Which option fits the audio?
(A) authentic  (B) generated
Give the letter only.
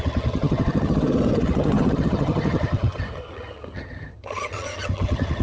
B